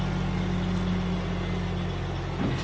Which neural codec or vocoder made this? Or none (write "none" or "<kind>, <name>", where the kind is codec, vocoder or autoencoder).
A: none